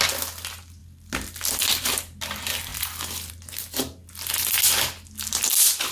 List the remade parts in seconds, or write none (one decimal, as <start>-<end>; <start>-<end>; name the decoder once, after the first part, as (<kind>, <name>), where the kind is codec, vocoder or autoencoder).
none